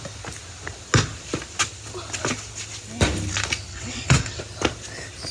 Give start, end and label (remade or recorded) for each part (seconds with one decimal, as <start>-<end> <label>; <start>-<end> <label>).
0.0-3.7 recorded; 3.7-4.4 remade; 4.4-5.3 recorded